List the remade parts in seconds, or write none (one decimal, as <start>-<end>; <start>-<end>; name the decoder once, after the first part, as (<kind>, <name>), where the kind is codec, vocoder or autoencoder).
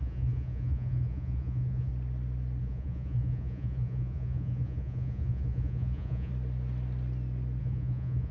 0.0-1.9 (vocoder, Vocos); 2.6-6.3; 7.6-8.3